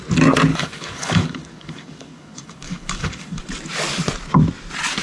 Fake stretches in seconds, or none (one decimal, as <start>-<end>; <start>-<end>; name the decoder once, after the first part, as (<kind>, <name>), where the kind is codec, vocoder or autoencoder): 0.5-3.4 (codec, DAC)